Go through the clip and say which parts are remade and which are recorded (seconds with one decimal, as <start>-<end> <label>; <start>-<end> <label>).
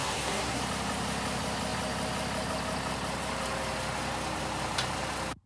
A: 0.0-0.6 remade; 0.6-5.5 recorded